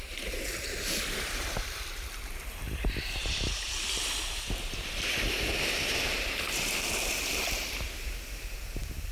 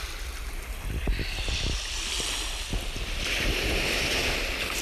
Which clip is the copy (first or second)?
first